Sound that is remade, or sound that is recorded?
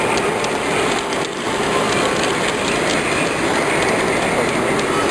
recorded